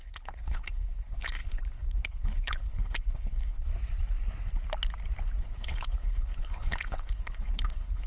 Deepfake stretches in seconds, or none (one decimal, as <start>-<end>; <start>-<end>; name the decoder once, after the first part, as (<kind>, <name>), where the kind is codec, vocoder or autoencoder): 0.0-3.7 (codec, HILCodec); 5.4-8.1